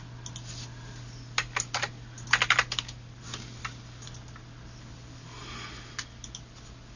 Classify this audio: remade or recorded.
recorded